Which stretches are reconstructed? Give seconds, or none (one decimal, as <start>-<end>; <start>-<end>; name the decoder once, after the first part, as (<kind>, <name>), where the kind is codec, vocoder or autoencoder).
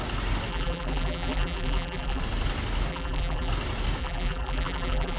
0.5-2.2 (vocoder, BigVGAN v2); 2.9-3.5; 4.0-5.2